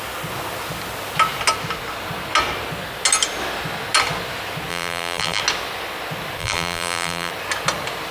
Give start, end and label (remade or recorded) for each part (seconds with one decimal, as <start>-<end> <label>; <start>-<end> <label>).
0.0-4.7 recorded; 4.7-5.4 remade; 5.4-6.4 recorded; 6.4-7.3 remade; 7.3-8.1 recorded